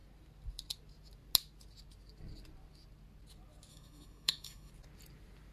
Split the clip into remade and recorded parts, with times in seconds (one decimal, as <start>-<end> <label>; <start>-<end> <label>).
0.0-3.7 recorded; 3.7-4.7 remade; 4.7-5.5 recorded